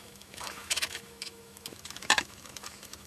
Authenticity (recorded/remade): remade